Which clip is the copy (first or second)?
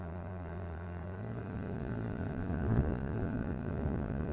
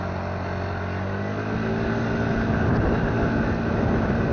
first